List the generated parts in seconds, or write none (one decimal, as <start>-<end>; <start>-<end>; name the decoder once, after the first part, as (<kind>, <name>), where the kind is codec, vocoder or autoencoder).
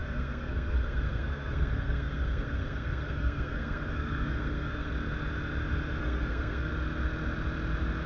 0.0-4.9 (codec, SNAC); 6.0-6.7